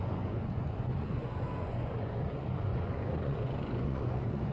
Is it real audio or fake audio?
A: fake